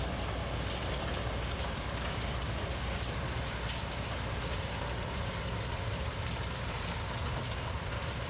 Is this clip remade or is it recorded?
remade